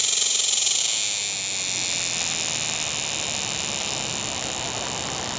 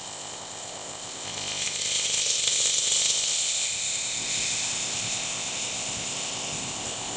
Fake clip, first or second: second